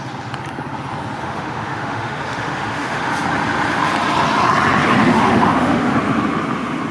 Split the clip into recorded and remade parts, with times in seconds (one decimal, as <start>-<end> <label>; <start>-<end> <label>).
0.0-1.2 recorded; 1.2-3.1 remade; 3.1-5.0 recorded; 5.0-5.9 remade; 5.9-6.9 recorded